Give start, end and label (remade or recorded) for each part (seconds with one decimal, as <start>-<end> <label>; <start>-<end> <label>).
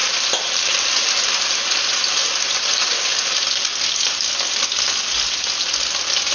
0.0-1.8 remade; 1.8-2.2 recorded; 2.2-3.5 remade; 3.5-6.3 recorded